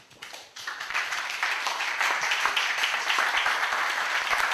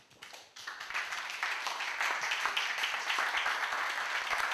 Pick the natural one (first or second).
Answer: second